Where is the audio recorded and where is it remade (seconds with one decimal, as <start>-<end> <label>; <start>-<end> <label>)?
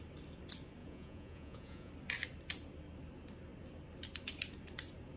0.0-0.8 recorded; 0.8-1.9 remade; 1.9-5.2 recorded